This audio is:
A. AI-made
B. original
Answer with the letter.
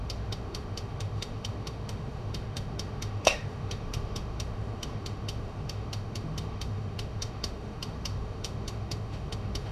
A